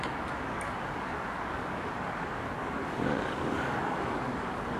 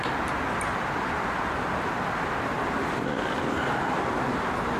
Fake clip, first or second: first